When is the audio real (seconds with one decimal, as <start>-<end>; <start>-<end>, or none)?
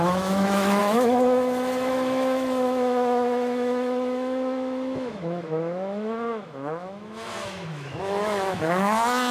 none